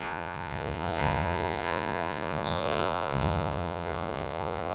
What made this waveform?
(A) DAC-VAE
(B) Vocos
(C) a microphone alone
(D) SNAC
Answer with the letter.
B